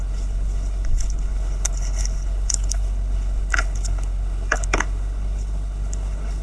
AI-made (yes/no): yes